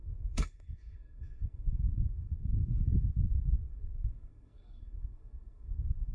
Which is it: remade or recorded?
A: remade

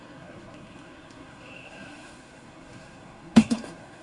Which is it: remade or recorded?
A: remade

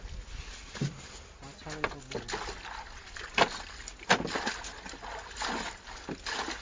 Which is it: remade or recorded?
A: recorded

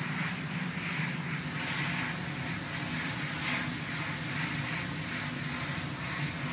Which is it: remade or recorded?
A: recorded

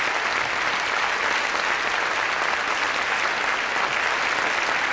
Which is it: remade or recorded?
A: recorded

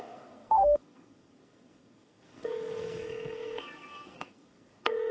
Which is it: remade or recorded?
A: remade